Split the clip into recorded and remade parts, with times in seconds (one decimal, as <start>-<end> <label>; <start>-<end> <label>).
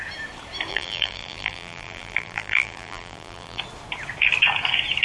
0.0-0.7 recorded; 0.7-3.6 remade; 3.6-5.0 recorded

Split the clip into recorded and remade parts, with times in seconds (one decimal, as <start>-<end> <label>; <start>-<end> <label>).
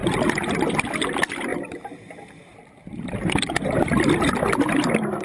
0.0-1.5 recorded; 1.5-3.6 remade; 3.6-5.2 recorded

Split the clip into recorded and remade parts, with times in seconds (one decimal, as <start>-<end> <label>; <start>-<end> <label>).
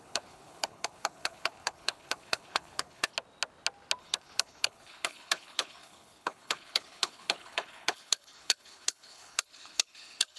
0.0-3.1 remade; 3.1-4.0 recorded; 4.0-10.4 remade